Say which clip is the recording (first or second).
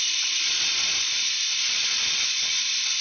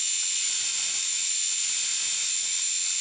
second